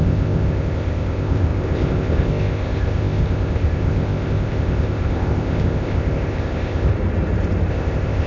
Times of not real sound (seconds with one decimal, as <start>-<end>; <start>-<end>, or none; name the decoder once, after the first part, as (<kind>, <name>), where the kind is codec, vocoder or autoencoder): 0.0-6.9 (codec, ZipCodec); 7.7-8.3